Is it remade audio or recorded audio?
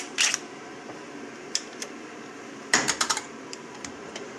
remade